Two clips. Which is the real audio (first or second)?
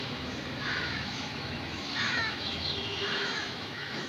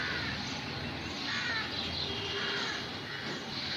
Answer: second